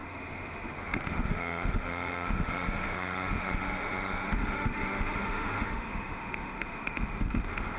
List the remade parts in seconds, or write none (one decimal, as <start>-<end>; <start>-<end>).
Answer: 0.0-7.8